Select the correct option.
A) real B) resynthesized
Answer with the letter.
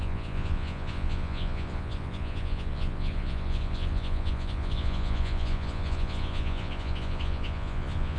B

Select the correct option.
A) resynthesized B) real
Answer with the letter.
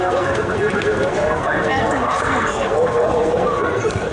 A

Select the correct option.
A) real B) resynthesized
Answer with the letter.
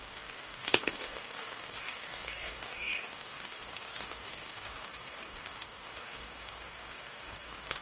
B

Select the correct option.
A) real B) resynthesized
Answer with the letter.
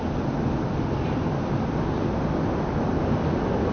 A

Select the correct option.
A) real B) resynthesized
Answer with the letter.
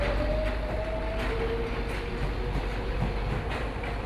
A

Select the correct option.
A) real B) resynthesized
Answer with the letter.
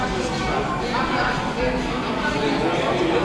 A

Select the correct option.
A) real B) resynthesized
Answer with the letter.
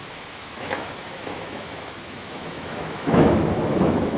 B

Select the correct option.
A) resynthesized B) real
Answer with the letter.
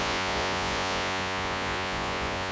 A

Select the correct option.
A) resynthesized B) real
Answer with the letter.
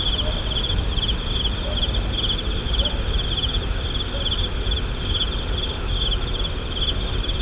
B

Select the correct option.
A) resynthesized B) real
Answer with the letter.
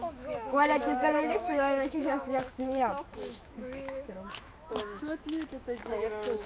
A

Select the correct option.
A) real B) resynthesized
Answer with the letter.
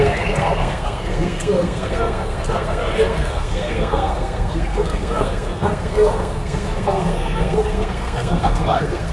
B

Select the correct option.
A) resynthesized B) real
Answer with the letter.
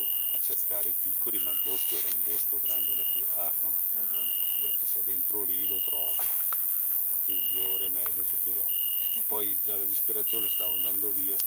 A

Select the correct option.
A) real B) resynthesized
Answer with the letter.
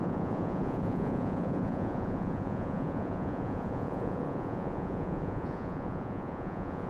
B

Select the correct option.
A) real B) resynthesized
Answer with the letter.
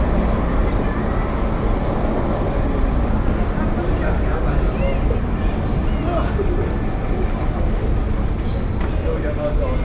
A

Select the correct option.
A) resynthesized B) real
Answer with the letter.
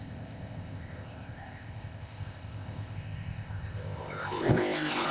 A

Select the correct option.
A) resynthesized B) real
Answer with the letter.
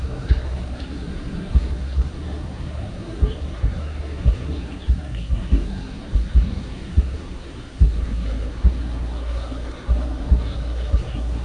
A